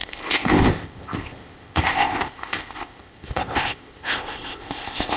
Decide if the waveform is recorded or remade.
remade